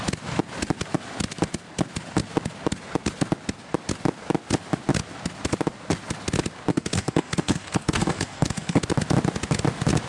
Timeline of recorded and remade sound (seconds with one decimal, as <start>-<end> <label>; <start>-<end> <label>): 0.0-6.7 recorded; 6.7-8.8 remade; 8.8-10.1 recorded